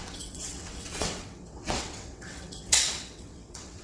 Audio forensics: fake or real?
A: fake